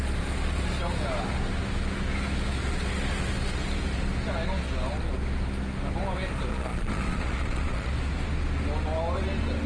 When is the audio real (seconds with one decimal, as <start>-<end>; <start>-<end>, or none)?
0.0-6.5; 7.9-9.7